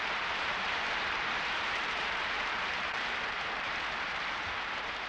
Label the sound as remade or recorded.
remade